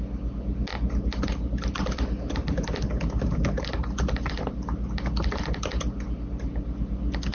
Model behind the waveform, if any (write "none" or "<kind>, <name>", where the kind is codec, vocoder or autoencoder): none